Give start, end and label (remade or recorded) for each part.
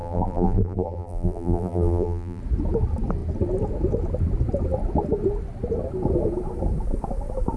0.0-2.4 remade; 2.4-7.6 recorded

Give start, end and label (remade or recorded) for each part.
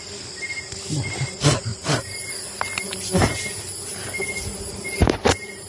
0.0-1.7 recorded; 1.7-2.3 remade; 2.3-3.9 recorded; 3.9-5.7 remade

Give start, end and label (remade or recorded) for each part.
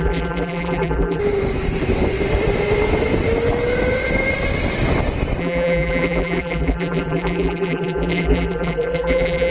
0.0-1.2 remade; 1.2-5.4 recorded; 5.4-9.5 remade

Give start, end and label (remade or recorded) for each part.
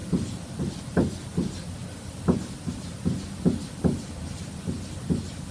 0.0-5.5 recorded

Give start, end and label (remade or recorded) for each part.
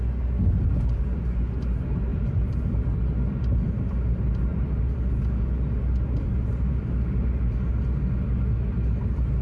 0.0-2.1 recorded; 2.1-3.8 remade; 3.8-4.5 recorded; 4.5-5.4 remade; 5.4-9.4 recorded